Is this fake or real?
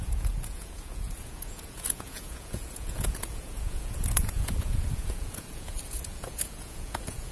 fake